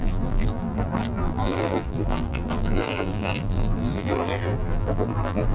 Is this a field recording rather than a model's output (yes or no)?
no